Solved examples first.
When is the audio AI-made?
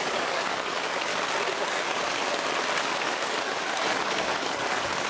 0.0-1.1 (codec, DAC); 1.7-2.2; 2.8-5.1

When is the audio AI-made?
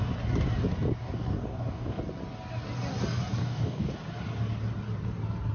1.0-2.0 (codec, DAC); 3.4-3.9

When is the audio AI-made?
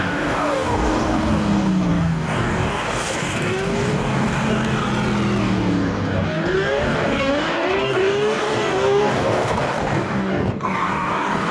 0.0-4.9 (codec, DAC); 5.4-11.5